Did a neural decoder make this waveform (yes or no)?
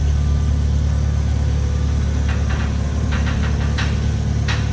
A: no